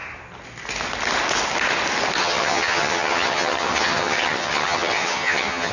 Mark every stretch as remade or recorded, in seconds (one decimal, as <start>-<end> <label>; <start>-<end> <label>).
0.0-2.2 recorded; 2.2-5.7 remade